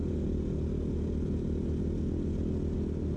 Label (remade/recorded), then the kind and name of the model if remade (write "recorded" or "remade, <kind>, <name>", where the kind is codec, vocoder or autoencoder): recorded